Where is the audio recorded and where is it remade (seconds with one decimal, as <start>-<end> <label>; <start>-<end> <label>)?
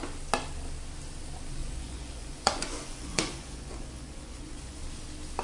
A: 0.0-1.6 recorded; 1.6-4.8 remade; 4.8-5.4 recorded